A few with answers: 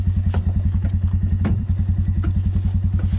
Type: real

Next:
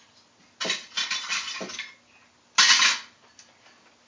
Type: real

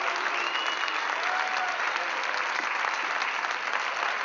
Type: real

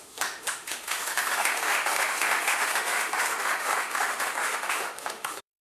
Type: fake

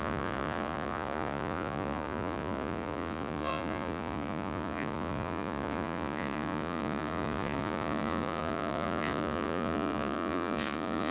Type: fake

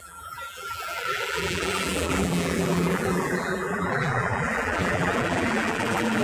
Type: fake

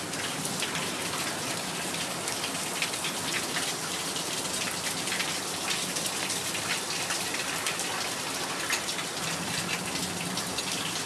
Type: real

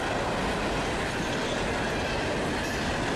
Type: real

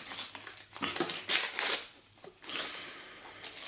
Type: real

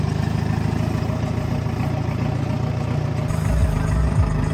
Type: real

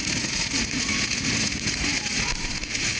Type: fake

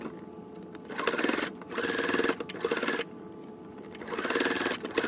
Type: real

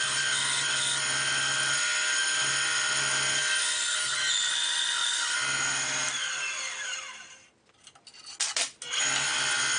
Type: real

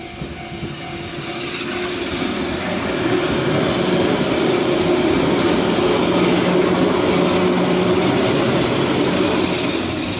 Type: real